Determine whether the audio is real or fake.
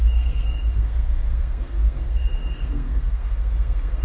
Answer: fake